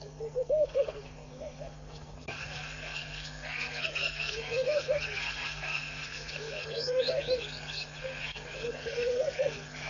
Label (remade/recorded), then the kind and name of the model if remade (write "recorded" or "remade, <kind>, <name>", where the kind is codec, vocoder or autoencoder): remade, codec, SNAC